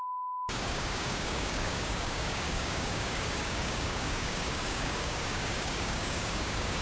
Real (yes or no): no